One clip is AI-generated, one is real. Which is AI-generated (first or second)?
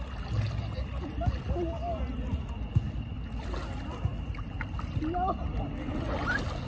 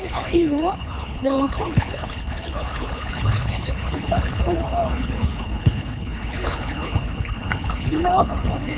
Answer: second